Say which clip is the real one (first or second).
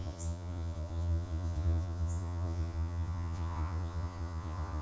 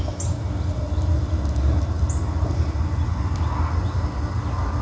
second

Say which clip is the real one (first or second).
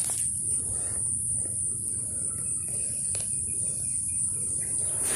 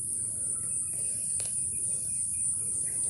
second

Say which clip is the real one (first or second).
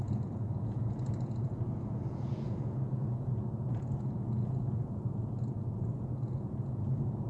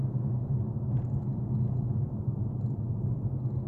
second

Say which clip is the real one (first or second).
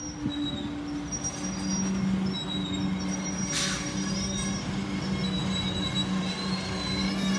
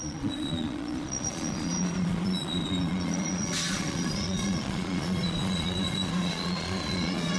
first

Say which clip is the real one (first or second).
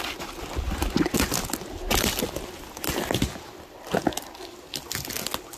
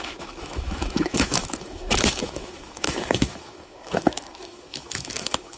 first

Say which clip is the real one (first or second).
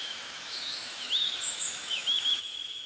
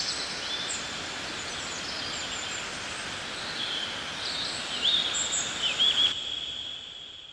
second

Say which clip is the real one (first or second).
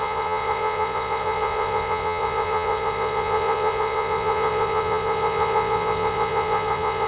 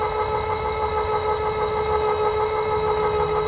second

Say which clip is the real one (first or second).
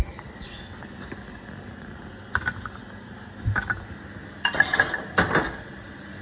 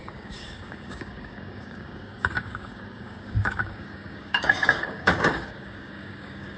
first